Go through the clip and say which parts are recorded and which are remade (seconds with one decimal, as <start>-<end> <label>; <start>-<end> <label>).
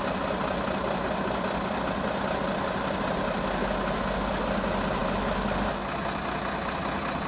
0.0-7.3 recorded